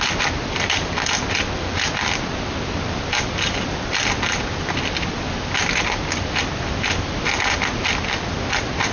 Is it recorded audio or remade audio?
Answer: recorded